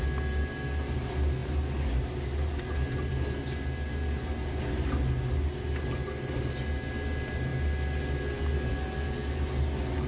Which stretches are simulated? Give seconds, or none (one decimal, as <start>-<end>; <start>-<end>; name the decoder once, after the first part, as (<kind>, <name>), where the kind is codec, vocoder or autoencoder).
none